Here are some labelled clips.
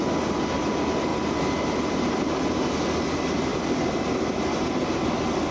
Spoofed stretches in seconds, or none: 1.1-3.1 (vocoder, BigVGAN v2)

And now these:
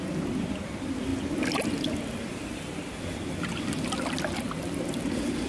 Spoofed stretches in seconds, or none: none

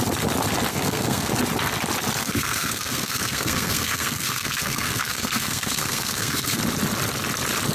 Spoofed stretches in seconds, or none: 0.7-1.3 (codec, SNAC); 2.2-6.6

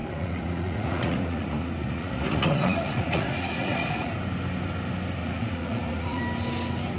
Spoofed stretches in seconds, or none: 0.0-4.1 (vocoder, Vocos); 5.2-6.2

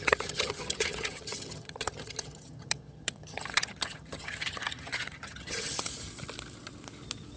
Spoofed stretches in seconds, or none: 0.0-5.9 (vocoder, HiFi-GAN)

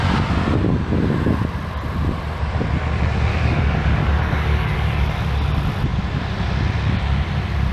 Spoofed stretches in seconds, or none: 3.3-5.1 (codec, DAC)

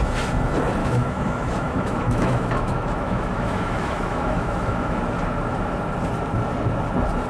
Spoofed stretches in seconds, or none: 0.8-5.0 (autoencoder, DAC-VAE)

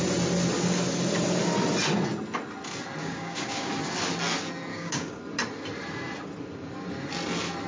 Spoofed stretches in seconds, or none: 3.0-3.7 (codec, DAC); 4.7-5.2